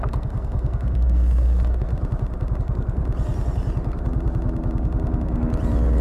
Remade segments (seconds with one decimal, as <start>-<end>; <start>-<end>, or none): 0.0-1.9; 2.6-3.0